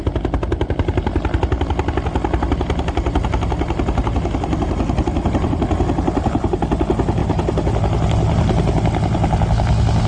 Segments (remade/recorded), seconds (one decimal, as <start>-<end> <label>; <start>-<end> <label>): 0.0-10.1 recorded